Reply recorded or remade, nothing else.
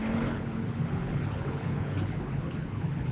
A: remade